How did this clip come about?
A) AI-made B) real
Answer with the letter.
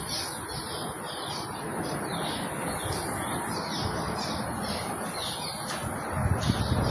B